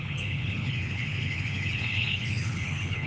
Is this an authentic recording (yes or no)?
no